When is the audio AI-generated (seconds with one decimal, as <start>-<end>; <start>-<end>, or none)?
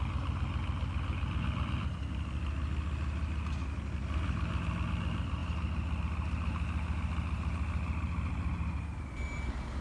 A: none